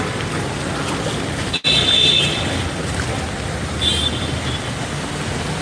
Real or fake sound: fake